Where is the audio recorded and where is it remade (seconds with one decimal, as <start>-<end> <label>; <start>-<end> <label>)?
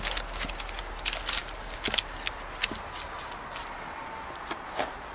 0.0-5.1 recorded